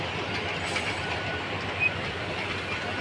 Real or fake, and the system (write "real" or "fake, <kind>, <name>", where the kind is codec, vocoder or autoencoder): real